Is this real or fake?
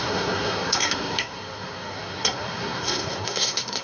fake